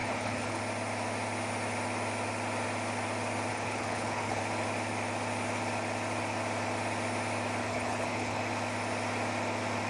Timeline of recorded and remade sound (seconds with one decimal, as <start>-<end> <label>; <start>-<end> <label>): 0.0-0.6 remade; 0.6-3.5 recorded; 3.5-4.4 remade; 4.4-7.6 recorded; 7.6-8.4 remade; 8.4-9.9 recorded